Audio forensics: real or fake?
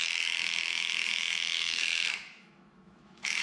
fake